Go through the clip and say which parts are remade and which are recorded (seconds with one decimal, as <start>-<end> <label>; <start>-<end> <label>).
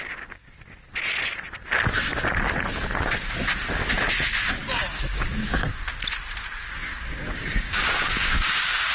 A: 0.0-0.4 remade; 0.4-4.7 recorded; 4.7-5.9 remade; 5.9-6.7 recorded; 6.7-8.9 remade